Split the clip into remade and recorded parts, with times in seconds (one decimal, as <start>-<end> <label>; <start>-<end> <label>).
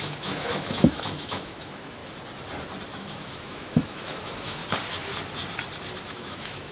0.0-2.0 remade; 2.0-3.0 recorded; 3.0-4.6 remade; 4.6-6.1 recorded; 6.1-6.7 remade